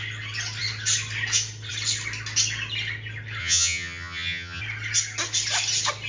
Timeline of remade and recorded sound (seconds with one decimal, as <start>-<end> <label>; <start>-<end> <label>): 0.0-3.4 recorded; 3.4-4.6 remade; 4.6-6.1 recorded